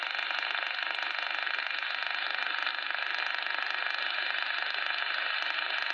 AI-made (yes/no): no